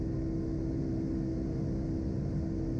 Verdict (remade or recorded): recorded